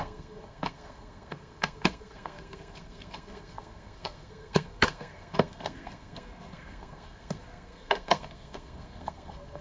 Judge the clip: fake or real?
fake